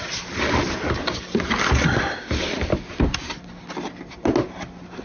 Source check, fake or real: real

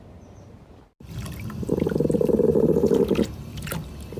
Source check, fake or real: real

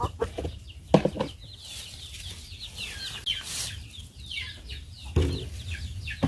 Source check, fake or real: real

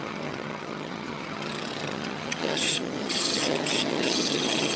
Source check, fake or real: fake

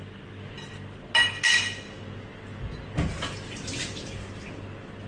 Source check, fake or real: real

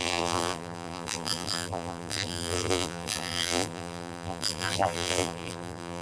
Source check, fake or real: fake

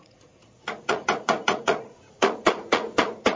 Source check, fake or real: fake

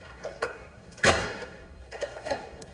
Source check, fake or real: fake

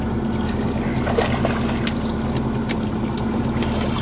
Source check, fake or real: real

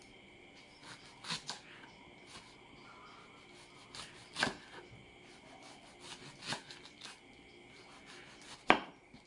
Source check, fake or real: real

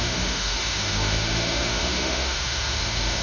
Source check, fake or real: fake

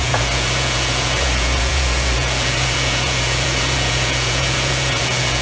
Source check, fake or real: fake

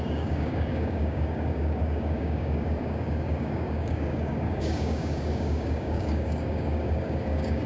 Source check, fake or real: fake